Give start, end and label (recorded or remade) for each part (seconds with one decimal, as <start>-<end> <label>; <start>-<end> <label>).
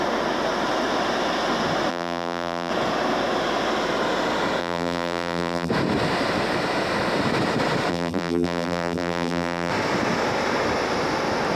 0.0-1.9 recorded; 1.9-2.7 remade; 2.7-4.6 recorded; 4.6-5.7 remade; 5.7-7.9 recorded; 7.9-9.7 remade; 9.7-11.6 recorded